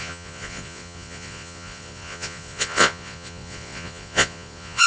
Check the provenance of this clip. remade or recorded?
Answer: remade